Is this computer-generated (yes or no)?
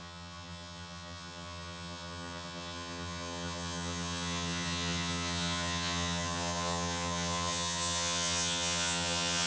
yes